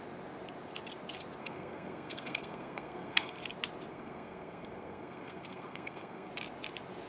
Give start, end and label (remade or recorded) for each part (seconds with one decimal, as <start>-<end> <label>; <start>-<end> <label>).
0.0-1.4 recorded; 1.4-3.4 remade; 3.4-3.9 recorded; 3.9-6.3 remade; 6.3-7.1 recorded